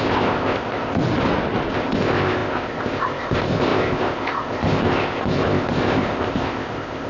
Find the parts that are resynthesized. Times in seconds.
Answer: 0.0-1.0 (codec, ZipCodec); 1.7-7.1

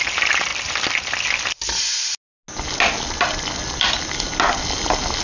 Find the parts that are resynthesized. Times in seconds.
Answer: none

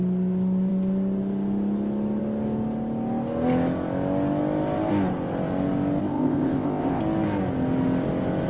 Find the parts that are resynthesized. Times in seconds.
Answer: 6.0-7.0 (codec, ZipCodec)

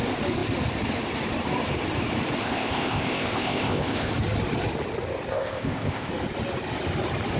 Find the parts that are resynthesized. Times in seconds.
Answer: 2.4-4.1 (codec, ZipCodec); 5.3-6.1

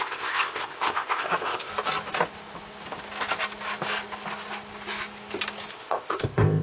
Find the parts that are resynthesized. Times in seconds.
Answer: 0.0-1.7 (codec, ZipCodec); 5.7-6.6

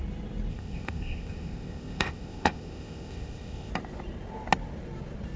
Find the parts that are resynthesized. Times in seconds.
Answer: 0.5-3.7 (codec, ZipCodec)

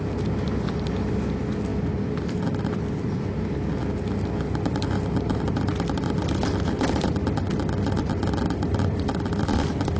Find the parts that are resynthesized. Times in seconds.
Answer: none